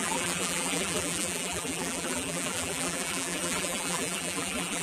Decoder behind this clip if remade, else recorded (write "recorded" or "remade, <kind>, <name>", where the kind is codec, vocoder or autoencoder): remade, vocoder, BigVGAN v2